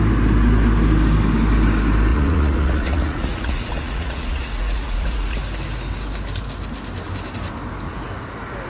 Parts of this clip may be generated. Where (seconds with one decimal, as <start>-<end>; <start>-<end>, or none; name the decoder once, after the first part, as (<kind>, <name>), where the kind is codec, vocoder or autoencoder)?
2.1-5.4 (vocoder, Vocos)